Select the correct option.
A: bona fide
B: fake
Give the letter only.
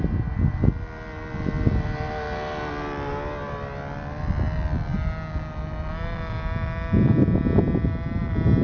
A